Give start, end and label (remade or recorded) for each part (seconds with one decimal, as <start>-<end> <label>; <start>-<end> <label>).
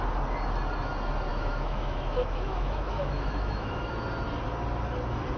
0.0-1.3 recorded; 1.3-3.9 remade; 3.9-5.4 recorded